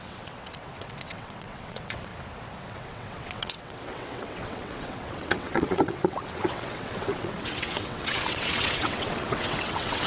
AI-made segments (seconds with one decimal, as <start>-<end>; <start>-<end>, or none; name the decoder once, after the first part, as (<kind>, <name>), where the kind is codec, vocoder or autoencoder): 0.0-2.1 (vocoder, WaveNeXt); 2.7-10.1